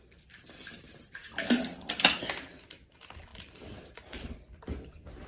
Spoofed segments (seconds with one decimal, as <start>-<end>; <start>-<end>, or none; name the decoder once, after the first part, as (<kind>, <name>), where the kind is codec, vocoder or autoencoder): none